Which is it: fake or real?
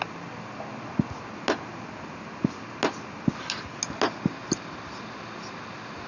real